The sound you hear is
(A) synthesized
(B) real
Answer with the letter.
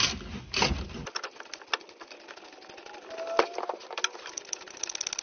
B